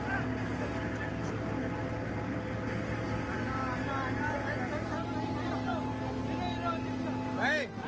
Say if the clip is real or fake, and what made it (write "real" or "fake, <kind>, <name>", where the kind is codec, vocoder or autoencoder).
real